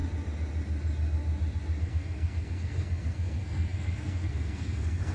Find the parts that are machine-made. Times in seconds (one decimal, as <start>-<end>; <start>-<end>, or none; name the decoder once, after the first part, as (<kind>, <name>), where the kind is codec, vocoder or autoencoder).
1.8-5.1 (codec, SNAC)